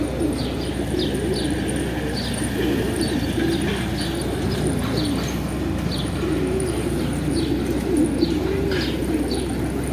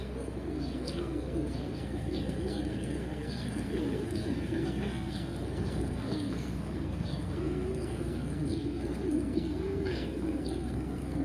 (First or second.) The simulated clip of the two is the second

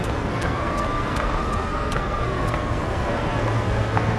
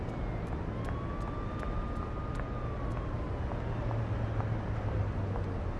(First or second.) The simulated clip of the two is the first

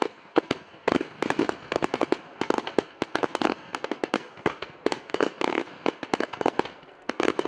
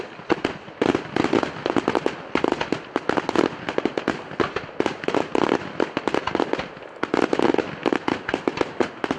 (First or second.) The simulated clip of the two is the first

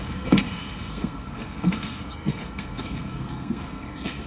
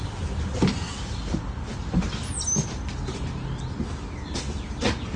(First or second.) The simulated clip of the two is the first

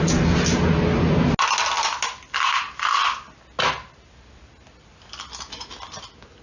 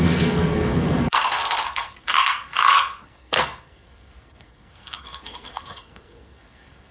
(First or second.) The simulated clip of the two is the second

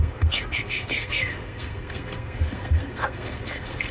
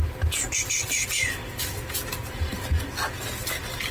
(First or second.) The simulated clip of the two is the first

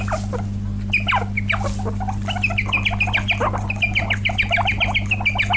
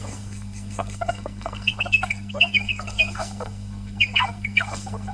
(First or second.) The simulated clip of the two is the second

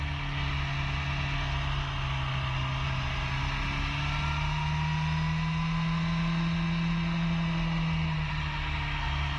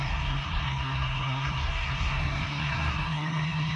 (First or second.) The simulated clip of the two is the second